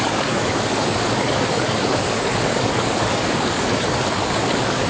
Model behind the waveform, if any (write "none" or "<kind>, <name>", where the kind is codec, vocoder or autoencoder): codec, DAC